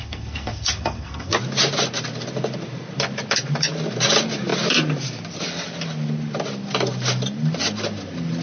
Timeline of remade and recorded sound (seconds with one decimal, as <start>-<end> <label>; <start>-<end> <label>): 0.0-1.3 remade; 1.3-8.4 recorded